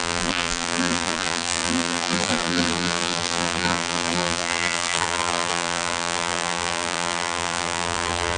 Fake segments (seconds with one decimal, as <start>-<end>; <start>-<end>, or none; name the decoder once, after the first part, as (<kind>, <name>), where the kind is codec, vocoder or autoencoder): 0.0-8.4 (vocoder, BigVGAN v2)

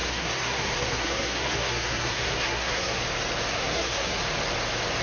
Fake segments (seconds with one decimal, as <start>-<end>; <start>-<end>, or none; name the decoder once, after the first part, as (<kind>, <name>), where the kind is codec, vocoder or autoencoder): 0.0-3.0 (codec, SNAC); 3.5-4.2

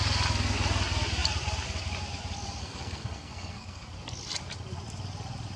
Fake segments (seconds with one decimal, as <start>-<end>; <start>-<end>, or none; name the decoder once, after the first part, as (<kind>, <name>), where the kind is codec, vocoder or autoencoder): 2.6-3.9 (codec, SNAC)

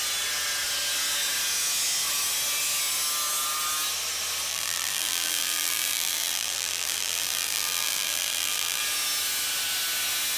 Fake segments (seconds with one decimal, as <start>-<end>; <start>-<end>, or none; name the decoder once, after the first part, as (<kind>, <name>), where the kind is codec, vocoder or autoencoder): 4.5-8.8 (vocoder, BigVGAN v2)

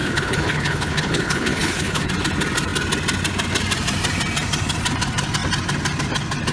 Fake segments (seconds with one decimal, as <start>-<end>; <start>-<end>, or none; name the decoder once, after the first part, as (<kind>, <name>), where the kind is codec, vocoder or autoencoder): 0.0-2.1 (codec, HILCodec)

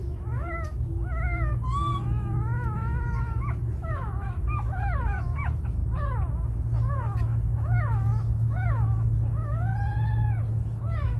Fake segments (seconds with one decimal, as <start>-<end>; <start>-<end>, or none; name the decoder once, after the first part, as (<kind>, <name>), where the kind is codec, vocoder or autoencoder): 0.0-5.8 (autoencoder, DAC-VAE); 6.9-9.7; 10.5-11.2

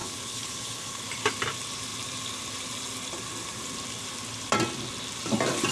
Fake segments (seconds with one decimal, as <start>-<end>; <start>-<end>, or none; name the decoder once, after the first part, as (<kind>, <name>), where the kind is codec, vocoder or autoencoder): 0.0-1.0 (codec, HILCodec)

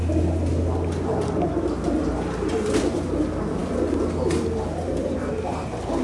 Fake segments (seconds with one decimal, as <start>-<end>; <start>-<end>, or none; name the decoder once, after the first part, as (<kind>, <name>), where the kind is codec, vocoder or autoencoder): none